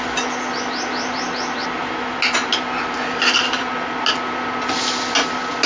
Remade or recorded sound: recorded